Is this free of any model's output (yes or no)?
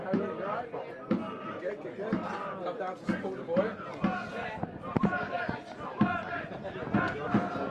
yes